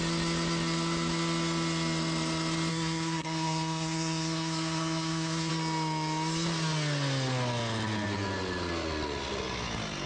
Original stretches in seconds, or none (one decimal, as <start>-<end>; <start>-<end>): 0.0-2.7; 5.5-10.1